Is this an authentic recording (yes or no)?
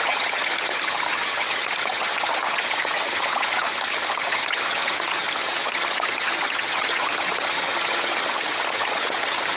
no